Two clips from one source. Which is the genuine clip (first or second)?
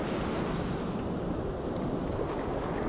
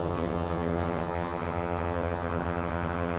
first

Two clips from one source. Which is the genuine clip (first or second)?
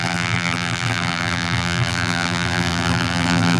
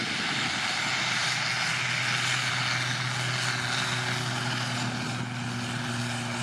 second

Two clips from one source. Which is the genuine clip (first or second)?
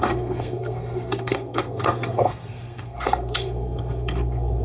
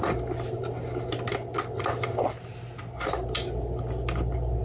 second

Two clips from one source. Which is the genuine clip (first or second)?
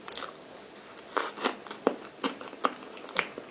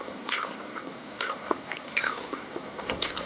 first